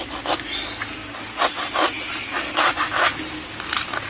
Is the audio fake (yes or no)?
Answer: no